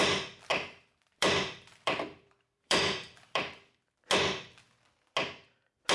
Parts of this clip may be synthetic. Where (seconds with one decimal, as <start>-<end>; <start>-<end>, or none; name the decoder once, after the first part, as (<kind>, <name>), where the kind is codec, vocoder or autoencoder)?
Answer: 0.5-3.8 (vocoder, BigVGAN v2)